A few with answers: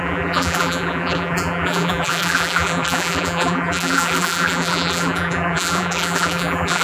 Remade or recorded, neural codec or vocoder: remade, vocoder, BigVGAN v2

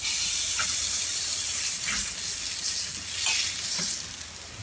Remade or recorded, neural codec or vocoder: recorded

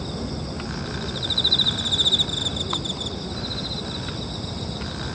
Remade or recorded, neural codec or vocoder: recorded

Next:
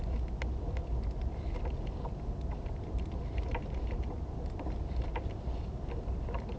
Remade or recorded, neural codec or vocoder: recorded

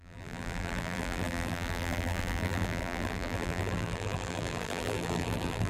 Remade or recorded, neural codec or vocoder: remade, vocoder, BigVGAN v2